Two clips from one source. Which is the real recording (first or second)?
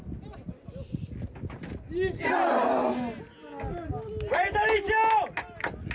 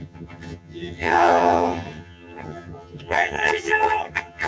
first